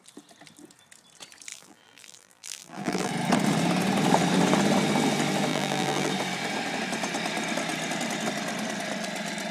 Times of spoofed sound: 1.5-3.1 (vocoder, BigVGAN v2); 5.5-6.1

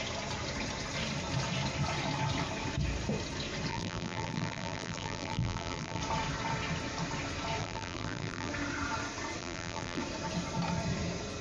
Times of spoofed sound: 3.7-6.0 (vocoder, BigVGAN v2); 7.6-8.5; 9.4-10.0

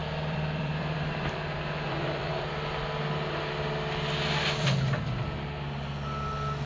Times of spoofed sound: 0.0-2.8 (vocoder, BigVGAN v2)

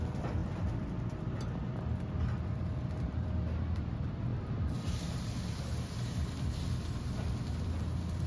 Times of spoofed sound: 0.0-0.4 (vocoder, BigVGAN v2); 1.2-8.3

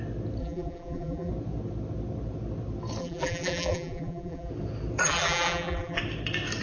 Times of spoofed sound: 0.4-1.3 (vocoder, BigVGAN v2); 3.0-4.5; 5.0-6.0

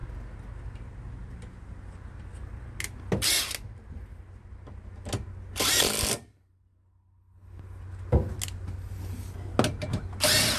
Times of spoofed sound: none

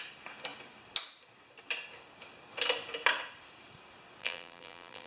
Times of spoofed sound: 4.2-5.1 (vocoder, BigVGAN v2)

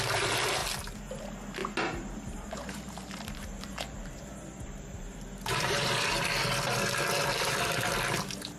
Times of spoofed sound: 1.6-5.9 (vocoder, BigVGAN v2)